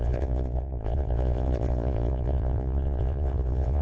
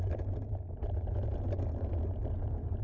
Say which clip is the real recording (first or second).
second